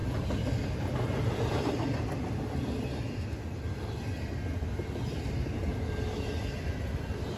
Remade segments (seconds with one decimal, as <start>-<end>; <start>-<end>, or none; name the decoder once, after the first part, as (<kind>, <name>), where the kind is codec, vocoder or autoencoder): 0.0-2.4 (vocoder, BigVGAN v2)